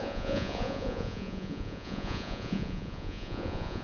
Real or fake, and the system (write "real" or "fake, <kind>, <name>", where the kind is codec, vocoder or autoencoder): fake, vocoder, Vocos